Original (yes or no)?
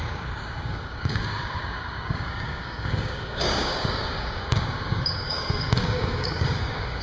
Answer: no